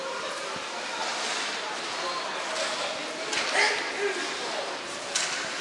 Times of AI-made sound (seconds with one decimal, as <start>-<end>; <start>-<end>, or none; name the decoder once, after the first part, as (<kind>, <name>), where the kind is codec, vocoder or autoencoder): none